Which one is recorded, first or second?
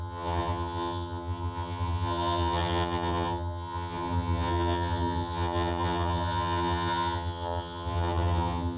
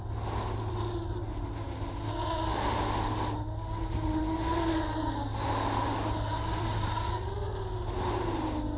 second